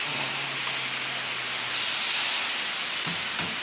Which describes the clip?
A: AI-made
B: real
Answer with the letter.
B